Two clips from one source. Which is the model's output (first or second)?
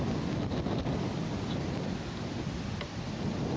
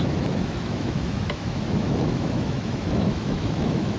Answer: second